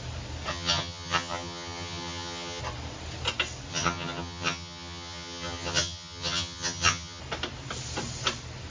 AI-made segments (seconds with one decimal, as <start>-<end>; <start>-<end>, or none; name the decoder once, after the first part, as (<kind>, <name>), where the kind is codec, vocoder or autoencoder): 0.5-2.6 (vocoder, HiFi-GAN); 3.7-7.2